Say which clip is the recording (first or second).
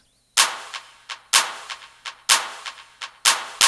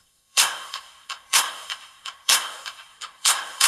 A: first